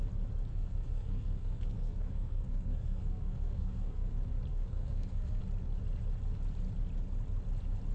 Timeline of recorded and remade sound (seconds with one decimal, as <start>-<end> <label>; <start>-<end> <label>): 0.0-0.5 recorded; 0.5-4.1 remade; 4.1-4.5 recorded; 4.5-5.4 remade; 5.4-7.9 recorded